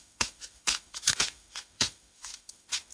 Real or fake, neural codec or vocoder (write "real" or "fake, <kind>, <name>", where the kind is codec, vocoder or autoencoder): fake, autoencoder, DAC-VAE